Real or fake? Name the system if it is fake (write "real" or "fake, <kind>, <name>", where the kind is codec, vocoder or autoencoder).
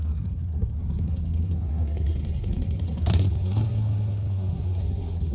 fake, codec, SNAC